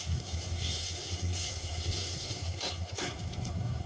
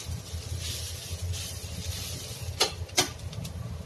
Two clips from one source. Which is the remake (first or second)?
first